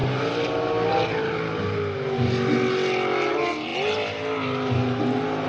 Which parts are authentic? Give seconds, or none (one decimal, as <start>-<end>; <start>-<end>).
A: 0.0-5.5